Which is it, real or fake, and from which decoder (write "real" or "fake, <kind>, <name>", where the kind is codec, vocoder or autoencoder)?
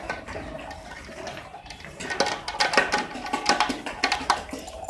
real